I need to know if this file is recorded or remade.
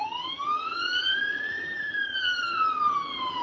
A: remade